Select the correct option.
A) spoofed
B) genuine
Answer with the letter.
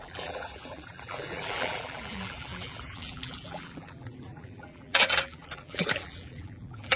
A